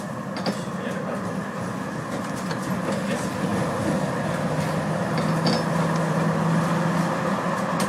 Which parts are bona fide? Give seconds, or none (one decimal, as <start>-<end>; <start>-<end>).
0.0-7.9